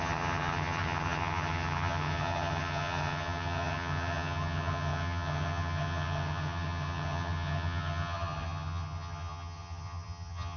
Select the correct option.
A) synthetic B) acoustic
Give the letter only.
A